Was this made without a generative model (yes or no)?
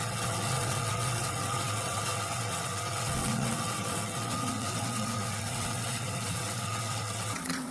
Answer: no